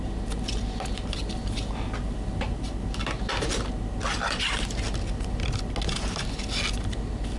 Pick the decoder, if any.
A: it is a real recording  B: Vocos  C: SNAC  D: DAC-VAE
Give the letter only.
A